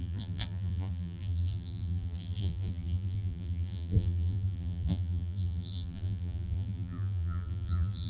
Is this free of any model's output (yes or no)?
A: no